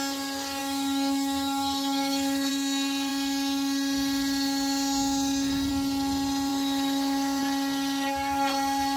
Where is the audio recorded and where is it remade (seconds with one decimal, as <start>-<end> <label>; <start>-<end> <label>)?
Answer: 0.0-0.6 recorded; 0.6-2.5 remade; 2.5-6.5 recorded; 6.5-7.4 remade; 7.4-9.0 recorded